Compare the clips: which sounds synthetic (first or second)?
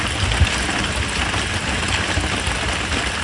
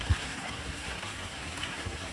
second